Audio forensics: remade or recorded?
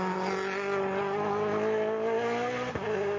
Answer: recorded